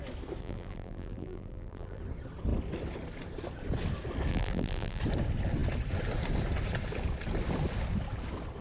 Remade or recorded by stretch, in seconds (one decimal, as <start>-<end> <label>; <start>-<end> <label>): 0.0-0.4 recorded; 0.4-2.0 remade; 2.0-4.3 recorded; 4.3-5.0 remade; 5.0-8.6 recorded